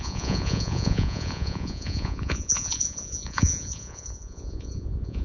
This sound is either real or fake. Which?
fake